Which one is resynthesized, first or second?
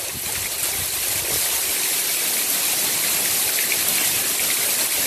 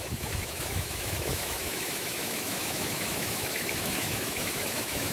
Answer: second